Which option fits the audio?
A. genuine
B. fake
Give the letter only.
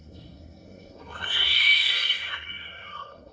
B